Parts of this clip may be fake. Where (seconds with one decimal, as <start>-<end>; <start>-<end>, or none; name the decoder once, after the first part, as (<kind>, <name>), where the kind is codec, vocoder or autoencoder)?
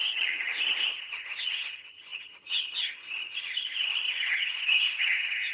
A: 0.0-0.5 (vocoder, HiFi-GAN); 1.0-5.5